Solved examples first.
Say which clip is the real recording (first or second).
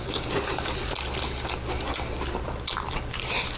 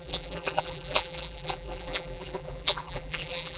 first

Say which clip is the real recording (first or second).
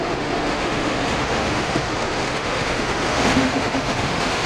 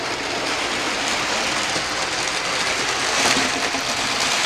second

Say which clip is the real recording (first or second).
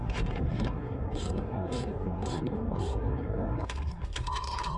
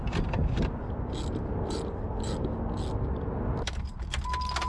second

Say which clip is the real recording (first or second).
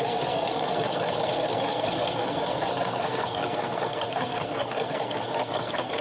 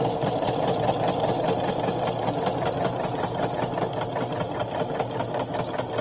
second